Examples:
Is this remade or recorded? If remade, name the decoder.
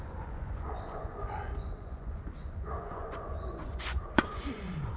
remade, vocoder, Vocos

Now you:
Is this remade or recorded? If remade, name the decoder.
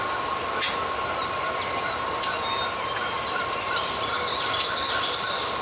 recorded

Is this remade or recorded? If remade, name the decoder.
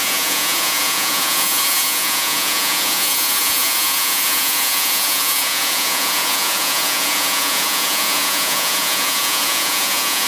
remade, vocoder, Vocos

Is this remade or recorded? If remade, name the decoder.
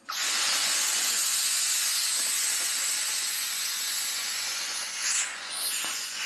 remade, vocoder, Vocos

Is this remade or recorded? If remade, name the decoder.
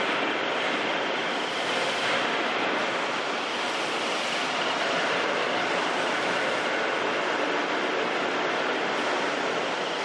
recorded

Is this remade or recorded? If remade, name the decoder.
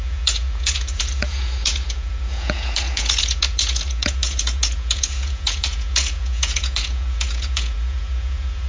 remade, vocoder, Vocos